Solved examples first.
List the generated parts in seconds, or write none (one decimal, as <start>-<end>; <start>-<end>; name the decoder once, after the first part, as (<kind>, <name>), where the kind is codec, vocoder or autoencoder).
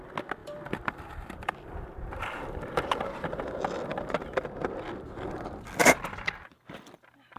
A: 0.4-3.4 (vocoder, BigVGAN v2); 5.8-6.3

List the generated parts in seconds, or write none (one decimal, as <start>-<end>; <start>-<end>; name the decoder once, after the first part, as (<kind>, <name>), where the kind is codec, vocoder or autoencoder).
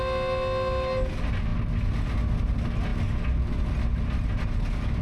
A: none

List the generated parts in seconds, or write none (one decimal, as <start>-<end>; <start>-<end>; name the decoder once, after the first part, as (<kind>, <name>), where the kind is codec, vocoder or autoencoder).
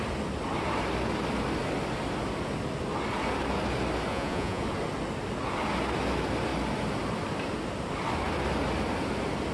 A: 4.1-4.6 (vocoder, Vocos)